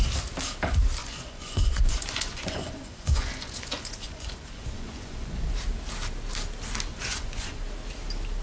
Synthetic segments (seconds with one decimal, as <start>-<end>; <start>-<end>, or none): 1.0-5.5; 6.9-7.6